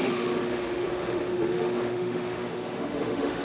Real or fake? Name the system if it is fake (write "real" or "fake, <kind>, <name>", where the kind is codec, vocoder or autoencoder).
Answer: fake, autoencoder, DAC-VAE